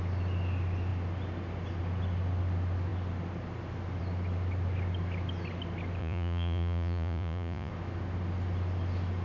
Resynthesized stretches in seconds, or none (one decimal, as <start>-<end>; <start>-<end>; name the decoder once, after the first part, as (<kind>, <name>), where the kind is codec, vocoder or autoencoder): 6.0-7.7 (vocoder, Vocos)